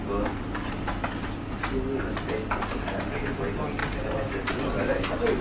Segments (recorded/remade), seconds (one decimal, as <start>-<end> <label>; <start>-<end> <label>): 0.0-5.4 recorded